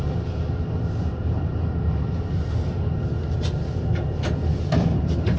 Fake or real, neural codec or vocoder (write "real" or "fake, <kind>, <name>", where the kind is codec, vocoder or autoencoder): real